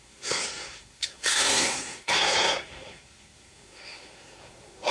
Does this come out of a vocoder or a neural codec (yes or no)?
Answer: yes